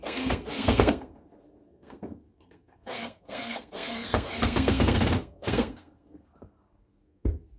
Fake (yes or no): yes